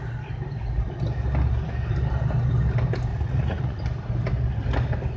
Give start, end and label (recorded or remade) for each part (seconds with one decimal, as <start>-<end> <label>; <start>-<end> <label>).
0.0-3.1 recorded; 3.1-3.8 remade; 3.8-5.2 recorded